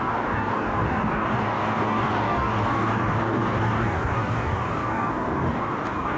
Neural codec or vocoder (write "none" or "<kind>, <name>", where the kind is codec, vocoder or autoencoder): codec, DAC